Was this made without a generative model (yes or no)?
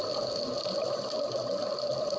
yes